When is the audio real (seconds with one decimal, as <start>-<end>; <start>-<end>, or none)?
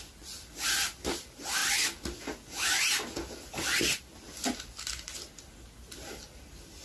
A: 0.0-6.8